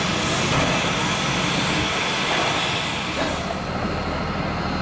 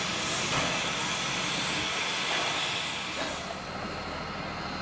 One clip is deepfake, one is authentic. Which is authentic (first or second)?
second